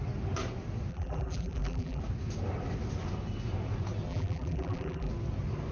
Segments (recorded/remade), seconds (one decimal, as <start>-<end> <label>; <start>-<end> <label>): 0.0-0.9 recorded; 0.9-2.0 remade; 2.0-4.1 recorded; 4.1-5.1 remade; 5.1-5.7 recorded